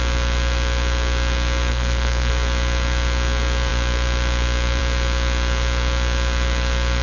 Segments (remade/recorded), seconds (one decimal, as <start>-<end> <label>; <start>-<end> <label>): 0.0-1.7 recorded; 1.7-2.3 remade; 2.3-7.0 recorded